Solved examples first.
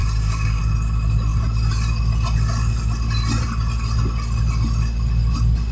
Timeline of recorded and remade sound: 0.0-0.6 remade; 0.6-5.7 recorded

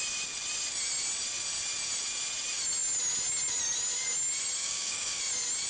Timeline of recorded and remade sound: 0.0-4.6 recorded; 4.6-5.2 remade; 5.2-5.7 recorded

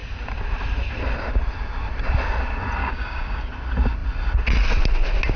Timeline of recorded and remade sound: 0.0-2.8 recorded; 2.8-3.5 remade; 3.5-5.4 recorded

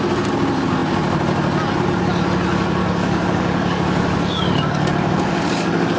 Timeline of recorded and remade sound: 0.0-2.8 recorded; 2.8-6.0 remade

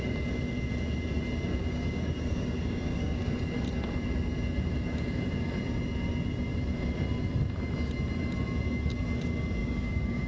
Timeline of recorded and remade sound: 0.0-1.6 recorded; 1.6-3.2 remade; 3.2-9.6 recorded; 9.6-10.3 remade

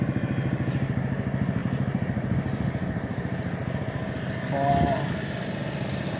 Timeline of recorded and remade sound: 0.0-6.2 recorded

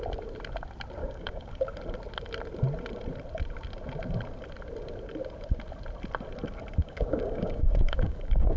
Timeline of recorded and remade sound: 0.0-1.0 recorded; 1.0-1.5 remade; 1.5-6.8 recorded; 6.8-8.6 remade